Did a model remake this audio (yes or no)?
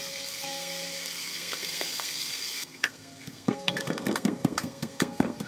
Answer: yes